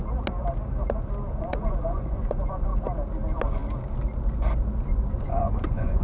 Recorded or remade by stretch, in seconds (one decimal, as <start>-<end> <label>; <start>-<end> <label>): 0.0-1.4 recorded; 1.4-2.7 remade; 2.7-5.1 recorded; 5.1-6.0 remade